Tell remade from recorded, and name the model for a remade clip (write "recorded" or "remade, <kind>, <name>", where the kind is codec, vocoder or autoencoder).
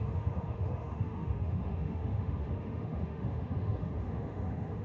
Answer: remade, autoencoder, DAC-VAE